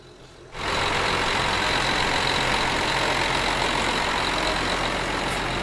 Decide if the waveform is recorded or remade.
recorded